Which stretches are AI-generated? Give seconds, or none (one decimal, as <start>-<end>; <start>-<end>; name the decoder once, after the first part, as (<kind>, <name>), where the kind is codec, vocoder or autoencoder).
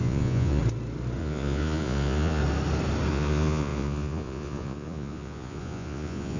0.0-0.6 (vocoder, Vocos); 1.2-2.4; 3.1-6.4